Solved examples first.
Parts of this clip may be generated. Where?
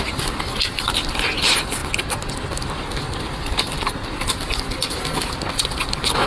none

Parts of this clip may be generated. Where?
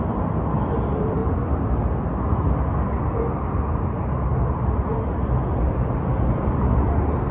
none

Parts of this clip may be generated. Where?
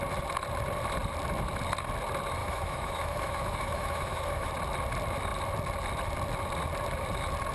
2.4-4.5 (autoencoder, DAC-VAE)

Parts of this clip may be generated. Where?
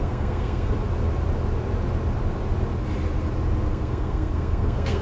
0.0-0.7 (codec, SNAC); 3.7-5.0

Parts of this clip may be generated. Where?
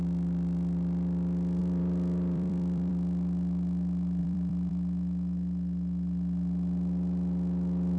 1.6-2.9 (vocoder, BigVGAN v2); 4.2-4.7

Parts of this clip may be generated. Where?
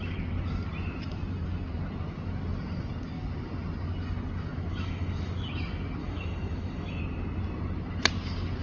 4.7-5.5 (autoencoder, DAC-VAE); 6.0-7.0